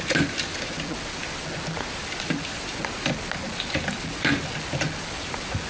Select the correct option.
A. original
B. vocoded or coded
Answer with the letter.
A